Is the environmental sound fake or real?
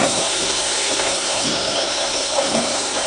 fake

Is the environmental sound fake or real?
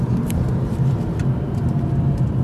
fake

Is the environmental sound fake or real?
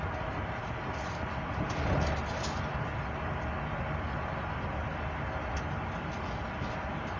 real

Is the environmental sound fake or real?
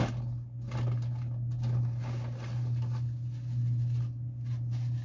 real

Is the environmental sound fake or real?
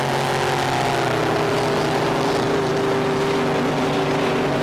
real